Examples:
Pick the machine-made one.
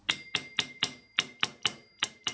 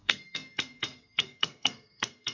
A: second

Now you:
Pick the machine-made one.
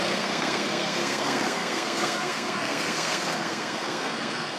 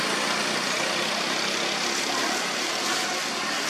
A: first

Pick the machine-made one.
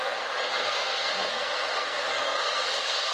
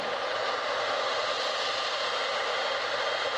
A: first